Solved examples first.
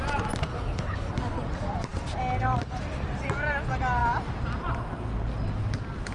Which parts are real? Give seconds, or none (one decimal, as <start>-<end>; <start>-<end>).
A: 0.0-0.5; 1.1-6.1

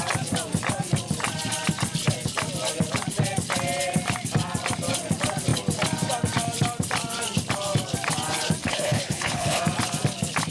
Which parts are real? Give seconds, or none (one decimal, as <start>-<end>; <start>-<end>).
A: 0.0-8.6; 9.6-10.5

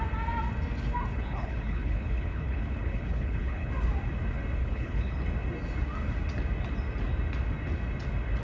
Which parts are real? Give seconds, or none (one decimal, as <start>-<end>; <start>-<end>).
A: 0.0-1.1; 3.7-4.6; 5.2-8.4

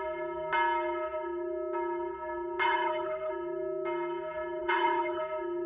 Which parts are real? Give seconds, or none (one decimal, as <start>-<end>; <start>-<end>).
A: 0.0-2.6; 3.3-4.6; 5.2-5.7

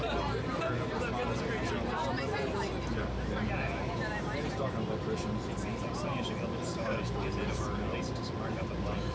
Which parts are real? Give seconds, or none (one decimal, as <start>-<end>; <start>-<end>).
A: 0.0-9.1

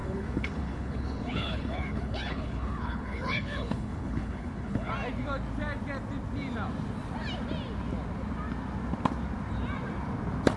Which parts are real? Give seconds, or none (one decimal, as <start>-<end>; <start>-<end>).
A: 4.9-10.6

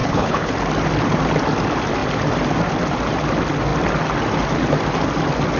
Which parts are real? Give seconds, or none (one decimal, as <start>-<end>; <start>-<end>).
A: 0.5-5.6

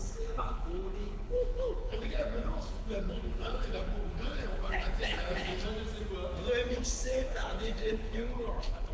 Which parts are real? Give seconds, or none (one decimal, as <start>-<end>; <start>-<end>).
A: 5.5-6.7